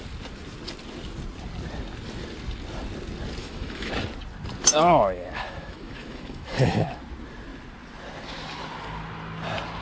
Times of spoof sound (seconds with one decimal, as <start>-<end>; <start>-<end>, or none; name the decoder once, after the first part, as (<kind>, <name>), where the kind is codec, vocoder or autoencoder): 3.4-3.9 (autoencoder, DAC-VAE); 4.7-7.0